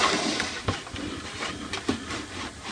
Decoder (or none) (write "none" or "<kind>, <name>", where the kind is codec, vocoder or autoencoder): none